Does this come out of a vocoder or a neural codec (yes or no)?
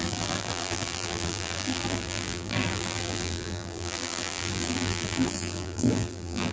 yes